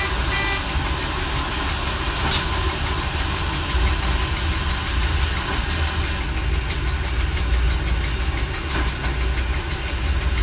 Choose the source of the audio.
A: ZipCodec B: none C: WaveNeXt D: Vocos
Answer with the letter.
B